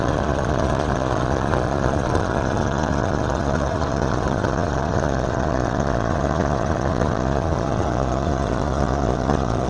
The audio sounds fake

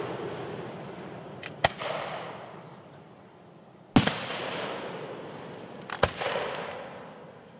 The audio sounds real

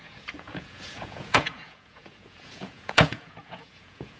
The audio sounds fake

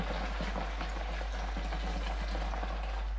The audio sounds real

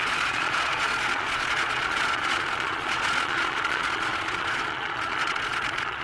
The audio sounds fake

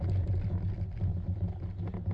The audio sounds real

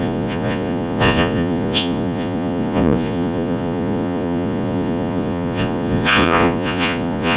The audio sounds fake